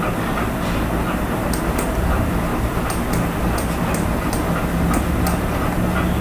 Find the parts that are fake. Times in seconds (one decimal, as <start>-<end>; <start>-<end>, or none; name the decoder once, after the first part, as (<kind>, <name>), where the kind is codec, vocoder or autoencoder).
none